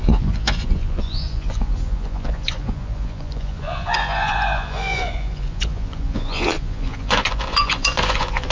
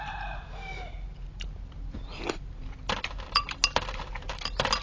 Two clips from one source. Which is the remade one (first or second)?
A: first